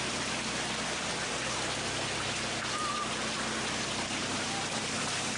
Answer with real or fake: real